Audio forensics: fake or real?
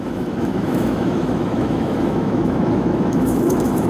fake